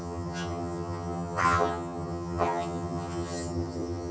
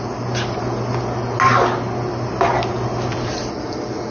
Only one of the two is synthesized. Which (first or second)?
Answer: first